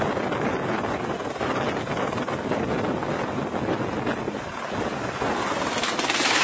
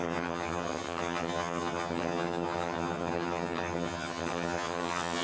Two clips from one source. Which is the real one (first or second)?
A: first